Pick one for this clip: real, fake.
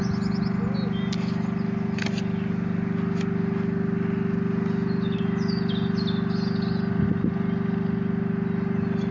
real